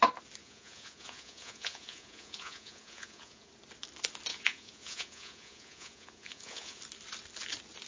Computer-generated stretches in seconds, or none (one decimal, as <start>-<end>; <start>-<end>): 0.4-3.5; 4.3-6.8